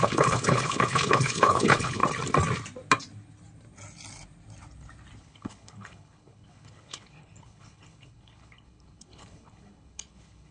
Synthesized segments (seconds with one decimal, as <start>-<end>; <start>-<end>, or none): 0.0-2.0; 5.2-10.5